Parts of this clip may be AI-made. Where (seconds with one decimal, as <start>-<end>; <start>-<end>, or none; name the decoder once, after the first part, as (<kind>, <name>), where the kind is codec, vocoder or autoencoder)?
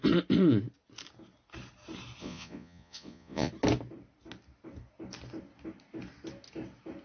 2.2-3.5 (vocoder, Vocos)